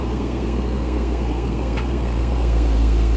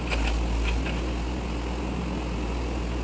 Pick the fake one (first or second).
first